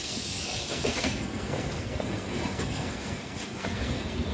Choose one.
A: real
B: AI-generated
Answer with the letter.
B